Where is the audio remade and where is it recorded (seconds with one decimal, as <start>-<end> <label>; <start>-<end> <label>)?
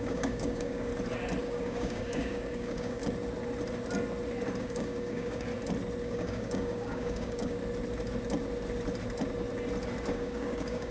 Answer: 0.0-0.9 remade; 0.9-1.4 recorded; 1.4-3.0 remade; 3.0-4.6 recorded; 4.6-5.5 remade; 5.5-6.0 recorded; 6.0-7.6 remade; 7.6-10.1 recorded; 10.1-10.9 remade